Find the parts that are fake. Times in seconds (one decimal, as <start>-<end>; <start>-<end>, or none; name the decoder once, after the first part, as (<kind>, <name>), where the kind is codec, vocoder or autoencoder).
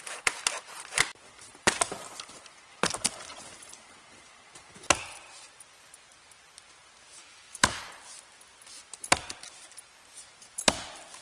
7.2-7.9 (autoencoder, DAC-VAE)